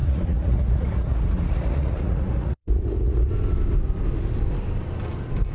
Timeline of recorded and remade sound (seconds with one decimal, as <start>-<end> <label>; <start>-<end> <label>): 0.0-3.3 remade; 3.3-5.5 recorded